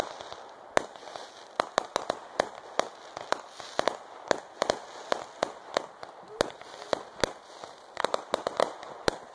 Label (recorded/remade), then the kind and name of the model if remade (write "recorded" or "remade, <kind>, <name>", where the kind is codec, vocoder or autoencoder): recorded